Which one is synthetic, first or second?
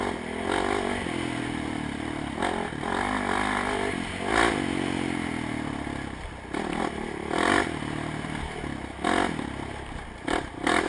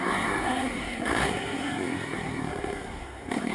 second